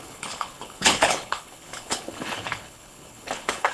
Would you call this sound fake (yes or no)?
yes